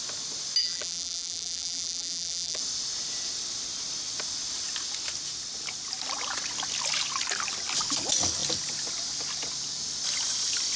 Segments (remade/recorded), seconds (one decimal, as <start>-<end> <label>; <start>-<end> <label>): 0.0-0.6 recorded; 0.6-2.6 remade; 2.6-10.8 recorded